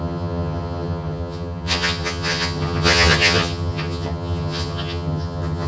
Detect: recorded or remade remade